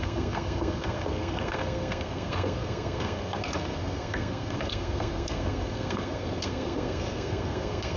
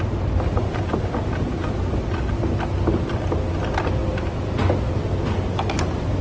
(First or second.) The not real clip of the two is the first